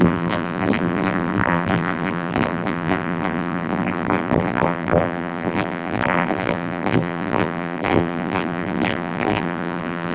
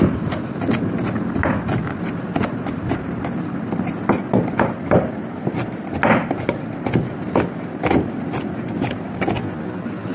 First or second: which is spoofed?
first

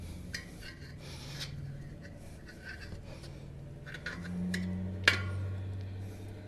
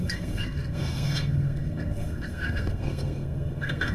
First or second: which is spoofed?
second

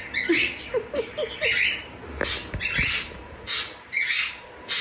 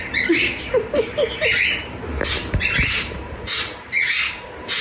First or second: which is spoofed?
second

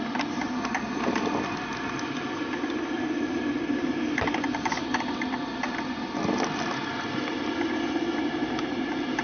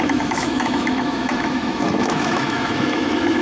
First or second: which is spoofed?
second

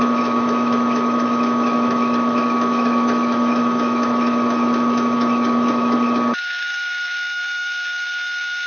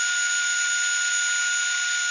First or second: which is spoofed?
first